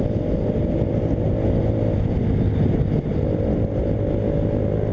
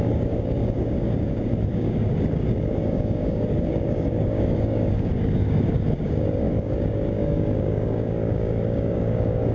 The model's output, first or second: second